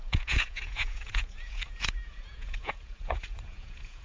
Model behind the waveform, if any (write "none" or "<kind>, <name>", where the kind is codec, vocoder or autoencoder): vocoder, Vocos